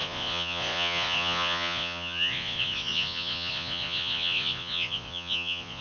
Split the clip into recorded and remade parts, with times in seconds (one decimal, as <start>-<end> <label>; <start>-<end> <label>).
0.0-5.8 remade